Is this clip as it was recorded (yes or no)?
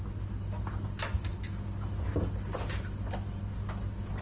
yes